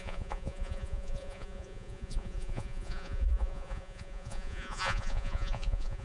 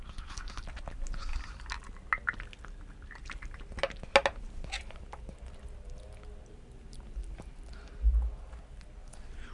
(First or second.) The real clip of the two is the second